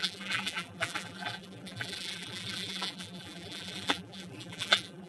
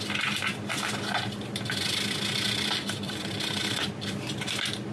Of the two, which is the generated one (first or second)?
first